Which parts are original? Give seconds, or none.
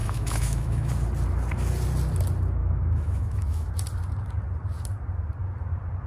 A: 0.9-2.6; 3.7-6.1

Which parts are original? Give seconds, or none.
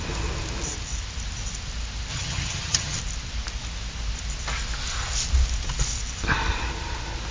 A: 0.0-2.1; 3.0-7.3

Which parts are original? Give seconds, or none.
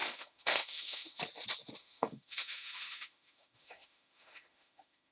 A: 1.2-1.8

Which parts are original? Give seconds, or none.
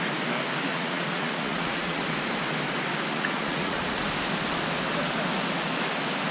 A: 0.0-0.7; 2.0-3.1; 4.0-6.3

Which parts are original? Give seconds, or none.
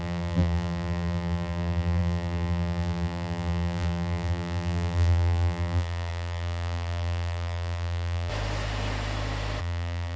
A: 8.3-9.6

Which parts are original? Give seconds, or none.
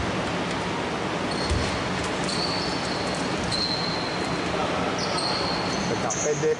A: 0.0-6.6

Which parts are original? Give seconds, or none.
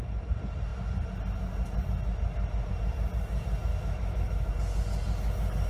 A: 0.0-3.7; 4.5-5.7